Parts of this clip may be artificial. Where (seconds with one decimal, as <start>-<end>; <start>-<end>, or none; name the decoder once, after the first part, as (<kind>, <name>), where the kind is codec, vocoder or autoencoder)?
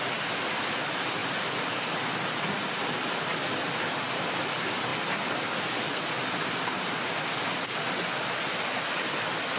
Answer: none